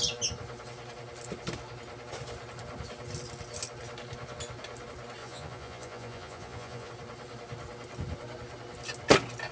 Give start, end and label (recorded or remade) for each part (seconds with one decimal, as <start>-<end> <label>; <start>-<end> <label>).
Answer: 0.0-5.2 recorded; 5.2-6.9 remade; 6.9-9.5 recorded